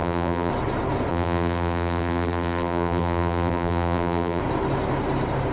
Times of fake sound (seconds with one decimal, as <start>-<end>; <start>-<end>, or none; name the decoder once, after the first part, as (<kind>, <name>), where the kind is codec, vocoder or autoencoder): 0.0-0.5 (vocoder, BigVGAN v2); 1.1-4.4